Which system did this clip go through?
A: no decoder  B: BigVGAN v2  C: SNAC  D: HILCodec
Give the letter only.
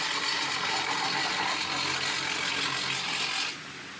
A